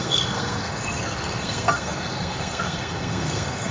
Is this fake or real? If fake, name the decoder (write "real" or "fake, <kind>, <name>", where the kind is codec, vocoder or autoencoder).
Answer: fake, codec, SNAC